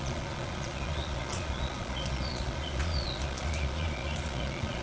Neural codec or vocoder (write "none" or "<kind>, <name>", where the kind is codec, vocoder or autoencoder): vocoder, Vocos